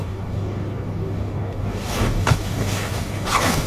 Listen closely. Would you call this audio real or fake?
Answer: fake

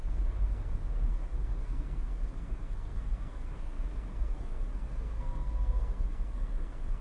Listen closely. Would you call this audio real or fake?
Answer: fake